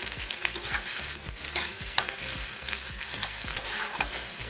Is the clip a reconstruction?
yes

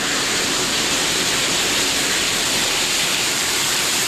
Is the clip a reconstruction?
yes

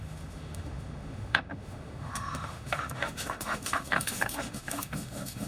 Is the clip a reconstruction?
yes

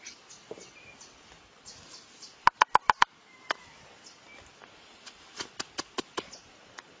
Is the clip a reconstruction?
no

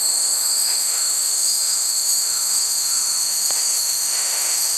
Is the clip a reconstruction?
yes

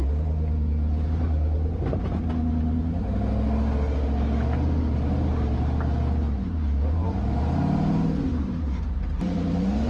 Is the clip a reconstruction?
no